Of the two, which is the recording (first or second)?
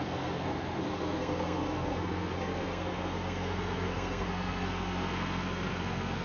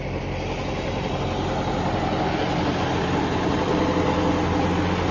second